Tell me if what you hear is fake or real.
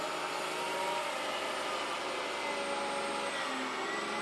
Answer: real